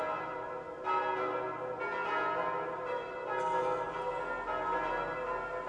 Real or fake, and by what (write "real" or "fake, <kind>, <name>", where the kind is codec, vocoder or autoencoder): real